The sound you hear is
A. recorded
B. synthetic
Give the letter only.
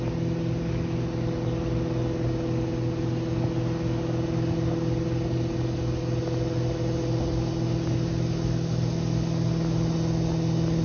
A